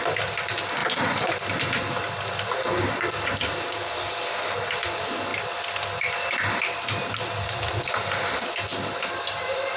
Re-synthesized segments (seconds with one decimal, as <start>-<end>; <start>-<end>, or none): 0.8-3.9; 5.3-6.6